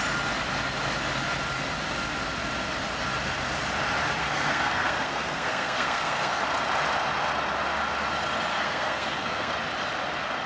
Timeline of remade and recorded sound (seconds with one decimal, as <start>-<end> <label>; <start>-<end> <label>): 0.0-4.2 recorded; 4.2-6.4 remade; 6.4-8.5 recorded; 8.5-9.5 remade; 9.5-10.5 recorded